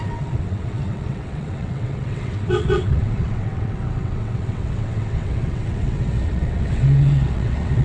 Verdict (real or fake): fake